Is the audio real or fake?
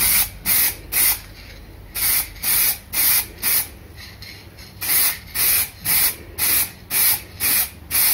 real